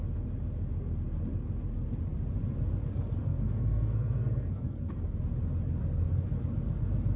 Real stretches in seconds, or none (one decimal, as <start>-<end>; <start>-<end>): 0.0-3.2; 4.9-7.2